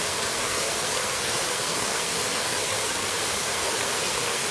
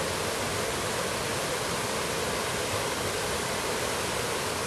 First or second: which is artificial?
first